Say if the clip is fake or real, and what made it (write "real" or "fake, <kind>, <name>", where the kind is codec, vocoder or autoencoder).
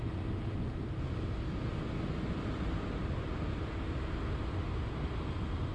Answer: real